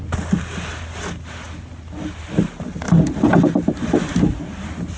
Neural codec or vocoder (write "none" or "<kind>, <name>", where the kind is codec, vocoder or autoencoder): none